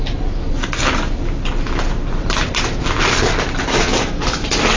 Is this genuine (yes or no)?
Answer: yes